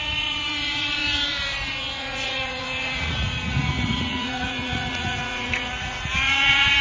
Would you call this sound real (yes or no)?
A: no